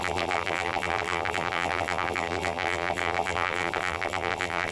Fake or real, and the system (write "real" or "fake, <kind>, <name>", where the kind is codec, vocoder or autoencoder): fake, vocoder, BigVGAN v2